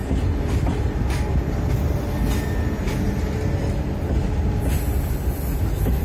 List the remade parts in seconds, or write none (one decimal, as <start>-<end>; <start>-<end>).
none